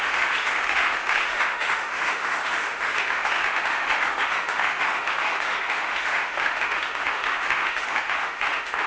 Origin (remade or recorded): remade